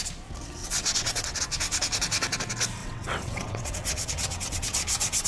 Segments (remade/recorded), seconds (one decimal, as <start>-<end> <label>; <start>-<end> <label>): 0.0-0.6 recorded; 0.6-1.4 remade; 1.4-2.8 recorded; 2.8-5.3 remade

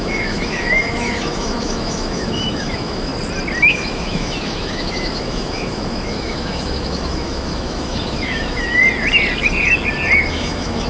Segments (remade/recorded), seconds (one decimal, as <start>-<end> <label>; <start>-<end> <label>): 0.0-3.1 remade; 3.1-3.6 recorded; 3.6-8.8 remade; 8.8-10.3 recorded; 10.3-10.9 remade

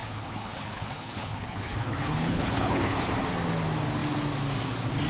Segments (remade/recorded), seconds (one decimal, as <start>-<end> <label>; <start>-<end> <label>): 0.0-3.1 remade; 3.1-5.1 recorded

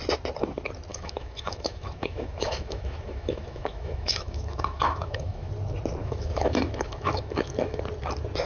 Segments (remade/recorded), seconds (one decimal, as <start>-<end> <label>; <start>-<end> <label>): 0.0-0.9 recorded; 0.9-5.5 remade; 5.5-6.0 recorded; 6.0-7.8 remade; 7.8-8.5 recorded